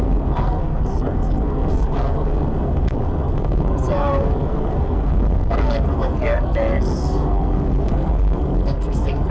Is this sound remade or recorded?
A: remade